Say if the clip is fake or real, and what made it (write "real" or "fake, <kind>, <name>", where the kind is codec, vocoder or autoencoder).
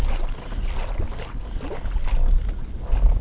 real